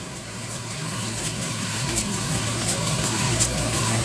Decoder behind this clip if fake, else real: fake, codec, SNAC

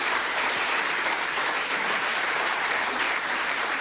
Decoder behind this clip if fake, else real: fake, vocoder, BigVGAN v2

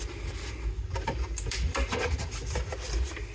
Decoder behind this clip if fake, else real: real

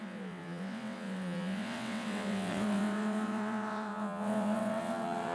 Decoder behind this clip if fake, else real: fake, vocoder, WaveNeXt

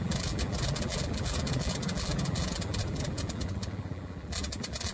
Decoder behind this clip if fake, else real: fake, vocoder, BigVGAN v2